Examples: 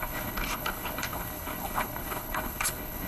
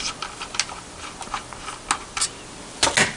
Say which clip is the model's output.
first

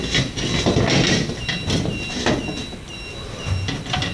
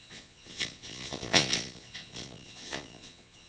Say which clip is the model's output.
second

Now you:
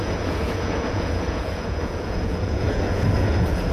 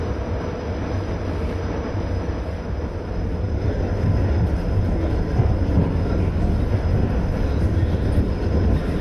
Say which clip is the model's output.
first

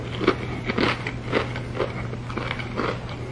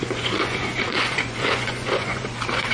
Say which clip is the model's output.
second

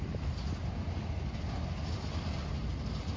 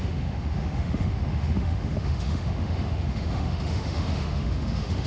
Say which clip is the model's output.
second